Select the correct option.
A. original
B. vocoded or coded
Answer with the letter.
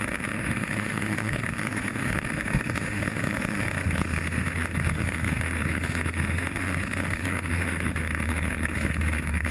B